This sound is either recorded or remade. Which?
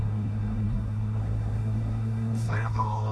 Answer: remade